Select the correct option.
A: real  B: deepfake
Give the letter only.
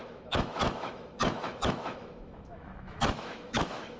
B